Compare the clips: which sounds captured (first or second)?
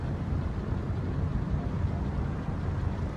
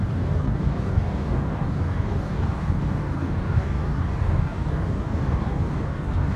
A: first